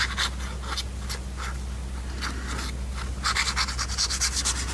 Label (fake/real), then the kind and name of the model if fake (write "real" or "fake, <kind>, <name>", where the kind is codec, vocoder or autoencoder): real